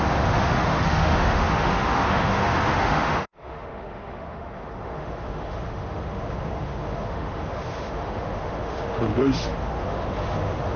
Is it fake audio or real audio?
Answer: fake